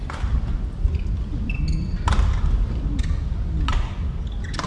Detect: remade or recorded recorded